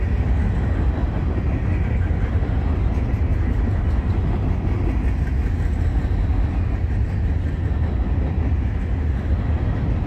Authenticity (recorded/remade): recorded